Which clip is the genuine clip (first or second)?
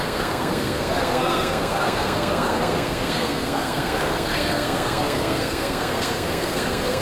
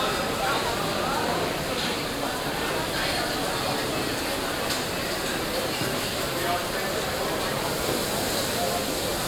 second